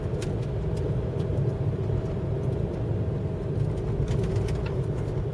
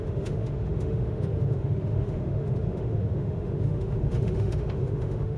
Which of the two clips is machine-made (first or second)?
second